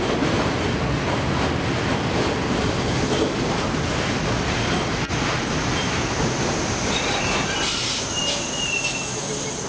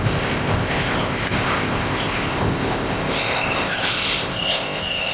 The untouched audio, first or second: first